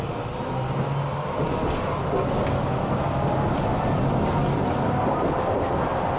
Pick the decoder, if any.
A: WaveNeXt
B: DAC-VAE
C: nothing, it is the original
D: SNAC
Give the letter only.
C